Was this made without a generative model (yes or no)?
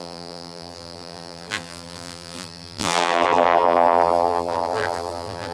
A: no